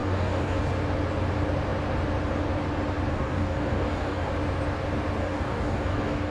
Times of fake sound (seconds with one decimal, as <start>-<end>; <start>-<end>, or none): 0.0-0.6; 3.1-4.3; 5.2-6.3

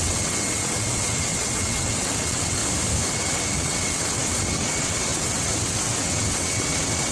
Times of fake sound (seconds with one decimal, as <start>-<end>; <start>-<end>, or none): 0.0-2.6; 3.1-7.1

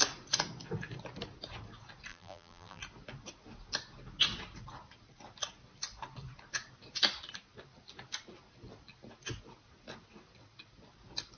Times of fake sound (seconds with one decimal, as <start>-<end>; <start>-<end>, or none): 2.1-2.8

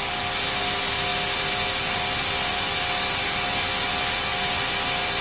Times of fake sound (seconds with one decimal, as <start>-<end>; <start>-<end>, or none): none

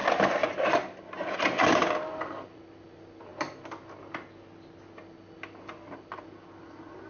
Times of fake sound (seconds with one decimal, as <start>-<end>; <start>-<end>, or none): none

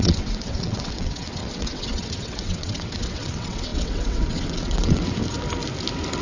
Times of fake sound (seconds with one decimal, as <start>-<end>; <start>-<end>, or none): 0.0-5.2

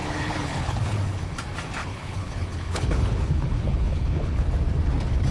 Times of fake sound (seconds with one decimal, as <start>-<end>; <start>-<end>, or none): 0.0-1.2; 1.8-4.5

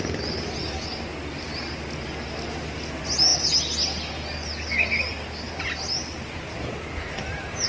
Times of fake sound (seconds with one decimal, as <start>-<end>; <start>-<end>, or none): none